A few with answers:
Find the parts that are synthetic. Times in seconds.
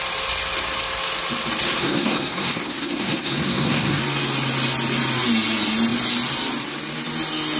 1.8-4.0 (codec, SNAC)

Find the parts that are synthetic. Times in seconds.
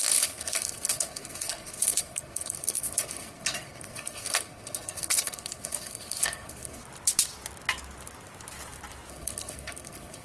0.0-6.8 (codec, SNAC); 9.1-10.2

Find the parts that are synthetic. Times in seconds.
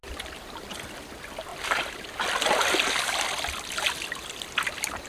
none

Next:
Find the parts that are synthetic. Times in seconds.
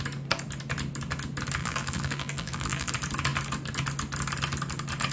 1.6-2.9 (vocoder, BigVGAN v2)